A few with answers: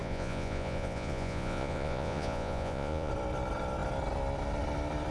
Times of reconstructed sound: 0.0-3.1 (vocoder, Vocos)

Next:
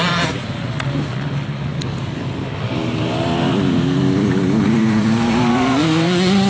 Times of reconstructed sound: none

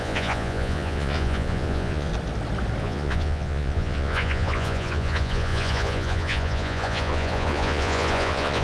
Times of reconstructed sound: 0.0-2.1 (vocoder, Vocos); 2.8-8.6